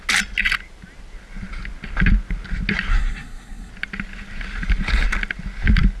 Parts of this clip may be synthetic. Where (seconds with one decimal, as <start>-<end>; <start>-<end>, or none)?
2.9-3.7